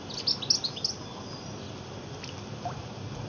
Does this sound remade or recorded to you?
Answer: recorded